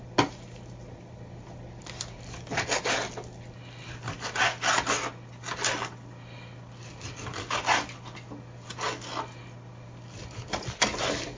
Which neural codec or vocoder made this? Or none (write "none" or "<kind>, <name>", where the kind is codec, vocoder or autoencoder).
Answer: none